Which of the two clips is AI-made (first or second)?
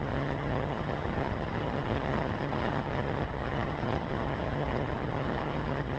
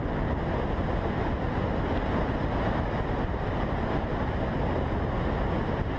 first